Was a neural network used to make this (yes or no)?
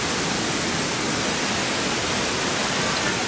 no